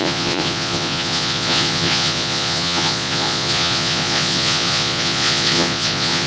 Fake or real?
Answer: fake